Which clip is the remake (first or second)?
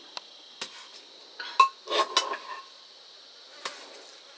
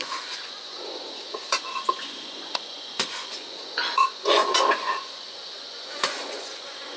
second